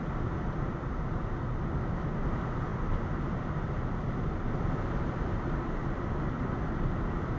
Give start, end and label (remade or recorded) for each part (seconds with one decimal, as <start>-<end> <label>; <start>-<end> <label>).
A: 0.0-7.4 recorded